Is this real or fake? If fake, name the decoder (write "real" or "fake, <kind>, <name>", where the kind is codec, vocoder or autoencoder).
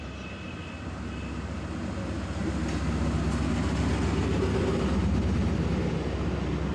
real